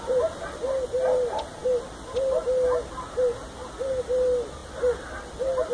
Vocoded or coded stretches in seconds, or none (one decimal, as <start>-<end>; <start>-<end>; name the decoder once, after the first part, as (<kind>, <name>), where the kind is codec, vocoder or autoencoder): none